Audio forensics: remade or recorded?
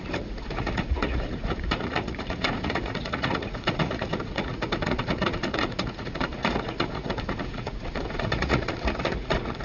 remade